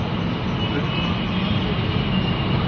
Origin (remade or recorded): recorded